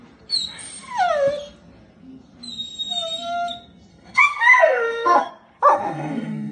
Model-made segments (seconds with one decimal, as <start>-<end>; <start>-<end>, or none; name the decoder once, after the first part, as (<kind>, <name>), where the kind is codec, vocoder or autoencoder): 3.9-5.3 (codec, SNAC); 5.7-6.5